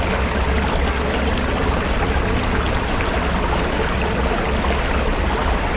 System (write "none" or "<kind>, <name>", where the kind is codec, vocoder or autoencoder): none